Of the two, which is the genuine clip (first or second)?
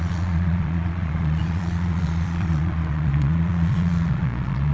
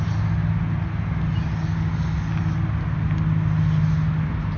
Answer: second